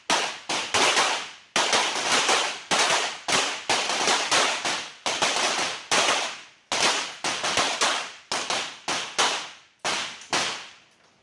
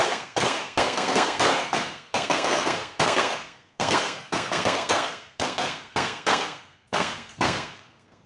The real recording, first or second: first